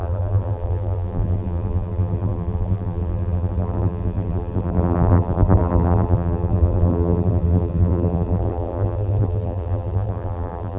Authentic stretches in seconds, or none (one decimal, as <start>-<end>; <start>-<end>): none